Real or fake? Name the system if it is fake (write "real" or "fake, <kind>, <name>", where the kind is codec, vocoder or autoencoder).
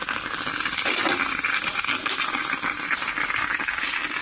real